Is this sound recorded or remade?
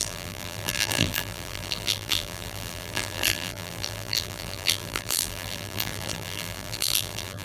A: remade